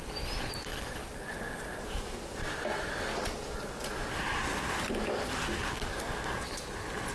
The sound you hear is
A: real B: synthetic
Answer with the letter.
A